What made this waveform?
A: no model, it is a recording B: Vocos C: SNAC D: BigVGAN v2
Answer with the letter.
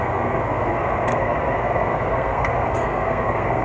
C